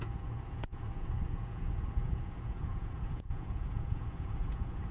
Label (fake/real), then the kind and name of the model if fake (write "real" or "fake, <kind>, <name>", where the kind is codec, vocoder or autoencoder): fake, vocoder, Vocos